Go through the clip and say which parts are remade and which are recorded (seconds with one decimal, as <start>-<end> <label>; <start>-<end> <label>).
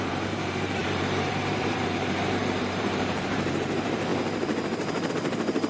0.0-4.1 remade; 4.1-5.1 recorded; 5.1-5.7 remade